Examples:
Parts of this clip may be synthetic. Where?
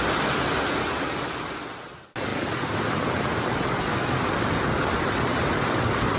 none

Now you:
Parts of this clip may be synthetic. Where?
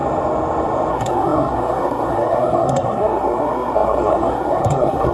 0.9-5.1 (codec, SNAC)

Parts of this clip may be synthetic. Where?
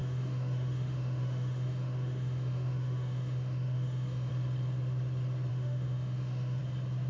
0.0-4.3 (autoencoder, DAC-VAE); 5.5-6.6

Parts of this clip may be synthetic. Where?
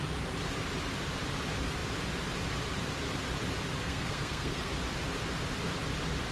3.8-4.7 (codec, SNAC)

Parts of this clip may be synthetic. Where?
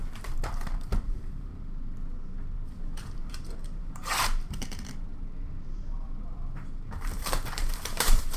0.0-8.4 (vocoder, BigVGAN v2)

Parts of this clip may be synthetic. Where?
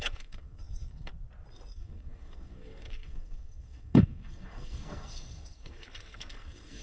0.0-1.1 (codec, SNAC); 1.7-6.8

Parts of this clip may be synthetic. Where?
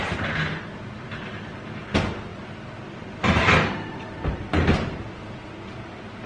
none